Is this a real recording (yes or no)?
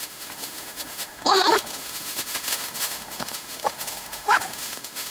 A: no